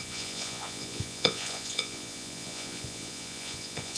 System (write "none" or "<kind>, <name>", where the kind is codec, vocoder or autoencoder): vocoder, Vocos